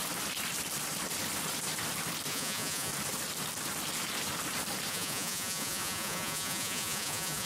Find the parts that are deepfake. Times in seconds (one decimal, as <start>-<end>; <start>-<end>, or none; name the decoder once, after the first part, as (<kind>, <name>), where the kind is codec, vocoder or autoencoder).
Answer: 2.3-2.9 (vocoder, Vocos); 4.9-7.5